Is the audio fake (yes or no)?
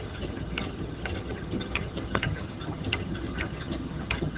yes